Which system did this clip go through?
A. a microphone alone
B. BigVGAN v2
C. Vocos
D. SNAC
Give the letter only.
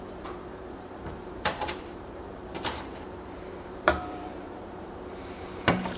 B